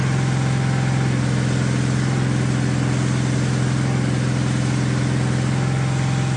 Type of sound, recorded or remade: recorded